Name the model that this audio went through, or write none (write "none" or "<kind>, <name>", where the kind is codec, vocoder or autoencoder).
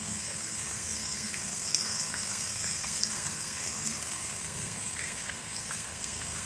codec, SNAC